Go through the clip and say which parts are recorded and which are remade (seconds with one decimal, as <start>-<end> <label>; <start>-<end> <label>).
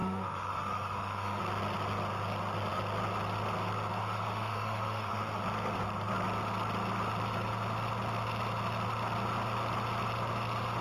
0.0-1.4 remade; 1.4-4.0 recorded; 4.0-5.4 remade; 5.4-10.8 recorded